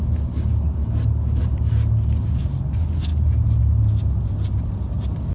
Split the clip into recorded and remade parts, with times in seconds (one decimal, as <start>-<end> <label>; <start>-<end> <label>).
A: 0.0-5.3 recorded